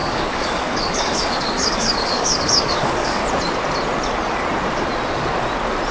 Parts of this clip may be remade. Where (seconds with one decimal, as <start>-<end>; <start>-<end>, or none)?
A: 0.0-3.2